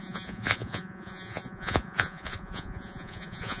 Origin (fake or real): fake